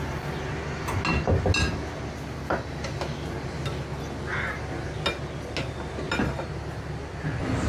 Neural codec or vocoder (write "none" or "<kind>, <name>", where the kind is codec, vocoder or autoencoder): none